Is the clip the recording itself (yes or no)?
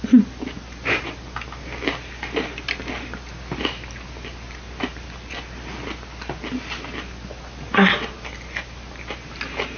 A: yes